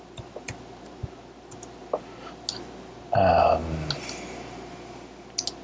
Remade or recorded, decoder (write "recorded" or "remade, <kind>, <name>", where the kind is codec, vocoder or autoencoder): recorded